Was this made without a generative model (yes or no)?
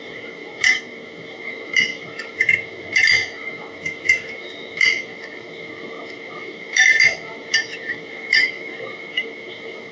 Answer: no